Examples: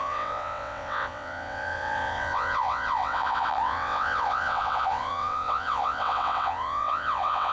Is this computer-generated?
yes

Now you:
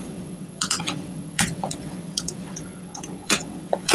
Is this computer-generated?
yes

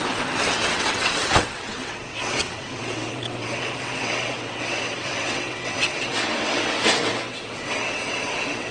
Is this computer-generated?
yes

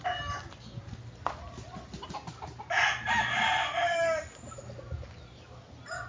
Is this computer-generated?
no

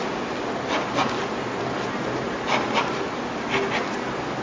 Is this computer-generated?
no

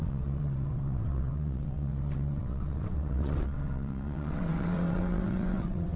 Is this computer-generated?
yes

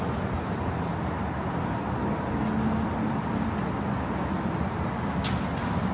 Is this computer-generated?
no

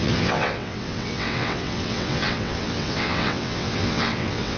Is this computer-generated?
yes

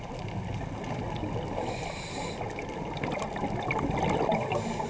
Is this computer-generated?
no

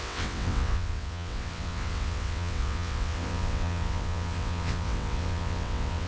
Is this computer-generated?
yes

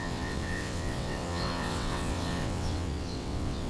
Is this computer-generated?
yes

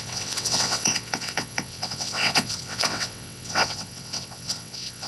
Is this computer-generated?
yes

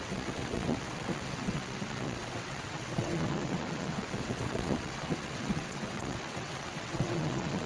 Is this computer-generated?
yes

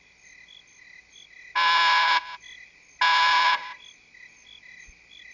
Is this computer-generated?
no